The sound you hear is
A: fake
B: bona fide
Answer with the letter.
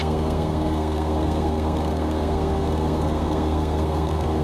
A